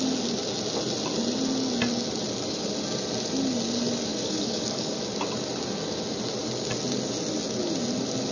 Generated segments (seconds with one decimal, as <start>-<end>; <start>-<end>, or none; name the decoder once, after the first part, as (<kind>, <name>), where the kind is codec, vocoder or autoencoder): 4.1-5.0 (codec, DAC)